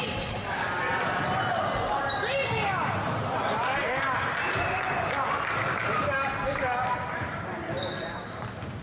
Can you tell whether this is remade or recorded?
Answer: recorded